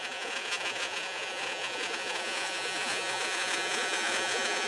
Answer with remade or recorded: remade